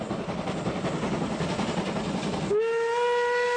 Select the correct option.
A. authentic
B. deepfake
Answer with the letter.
A